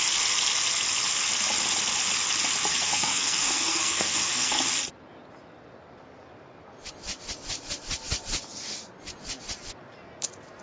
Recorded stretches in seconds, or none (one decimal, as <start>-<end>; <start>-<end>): 0.0-2.7; 4.6-10.6